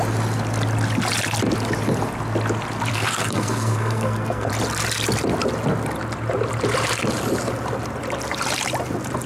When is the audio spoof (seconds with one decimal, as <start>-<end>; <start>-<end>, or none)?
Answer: 2.9-4.5